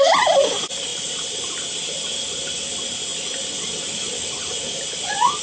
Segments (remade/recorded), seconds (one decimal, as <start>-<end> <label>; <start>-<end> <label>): 0.0-5.4 recorded